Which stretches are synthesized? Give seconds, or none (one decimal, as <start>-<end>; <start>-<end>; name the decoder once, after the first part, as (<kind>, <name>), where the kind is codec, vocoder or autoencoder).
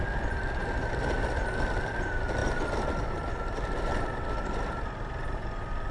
none